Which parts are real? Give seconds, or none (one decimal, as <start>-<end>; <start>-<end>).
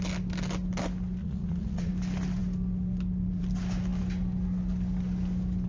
0.0-1.2; 1.9-5.7